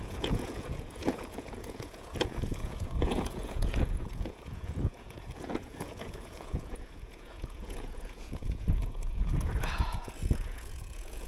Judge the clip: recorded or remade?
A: remade